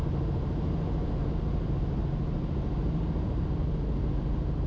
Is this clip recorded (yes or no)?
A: yes